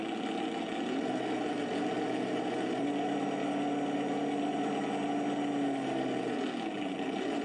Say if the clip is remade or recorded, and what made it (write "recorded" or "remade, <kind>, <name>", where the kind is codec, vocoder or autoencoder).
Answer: recorded